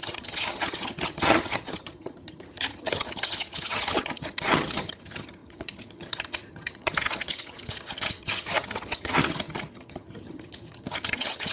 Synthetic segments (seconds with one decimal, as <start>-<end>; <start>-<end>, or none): 0.0-11.5